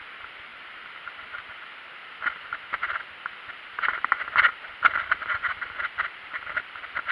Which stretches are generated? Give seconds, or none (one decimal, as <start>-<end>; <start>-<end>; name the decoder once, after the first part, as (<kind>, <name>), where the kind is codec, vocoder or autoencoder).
0.0-0.5 (vocoder, BigVGAN v2); 4.5-7.1